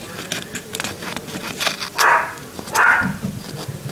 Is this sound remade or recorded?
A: recorded